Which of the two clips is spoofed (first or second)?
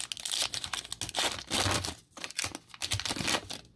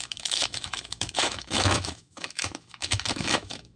second